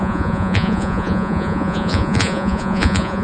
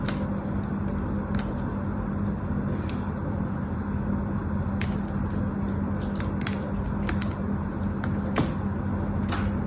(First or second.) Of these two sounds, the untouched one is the second